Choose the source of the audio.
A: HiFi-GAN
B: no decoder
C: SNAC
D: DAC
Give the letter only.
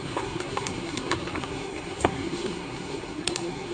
C